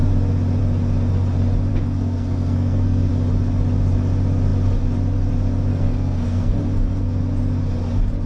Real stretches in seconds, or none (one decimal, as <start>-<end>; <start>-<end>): 0.0-1.7; 3.1-5.7; 7.2-8.3